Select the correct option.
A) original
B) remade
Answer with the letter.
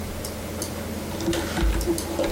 A